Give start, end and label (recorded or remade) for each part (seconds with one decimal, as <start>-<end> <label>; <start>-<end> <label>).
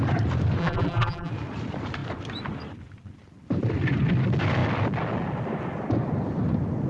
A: 0.0-0.6 recorded; 0.6-1.3 remade; 1.3-6.9 recorded